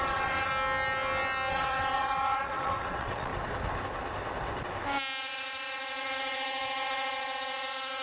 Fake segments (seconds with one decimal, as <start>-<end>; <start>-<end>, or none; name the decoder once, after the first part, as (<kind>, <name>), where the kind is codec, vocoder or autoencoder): 0.0-0.5 (vocoder, WaveNeXt); 1.5-3.3; 5.2-8.0